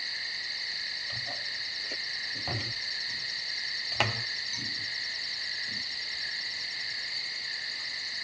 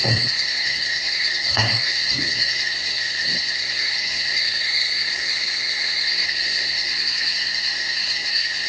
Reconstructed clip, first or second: second